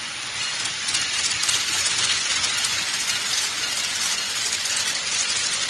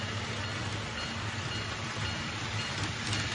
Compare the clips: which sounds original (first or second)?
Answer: second